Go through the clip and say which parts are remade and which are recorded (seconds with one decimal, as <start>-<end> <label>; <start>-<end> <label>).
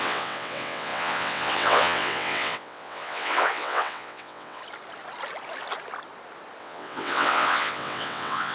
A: 0.0-4.6 remade; 4.6-6.6 recorded; 6.6-8.5 remade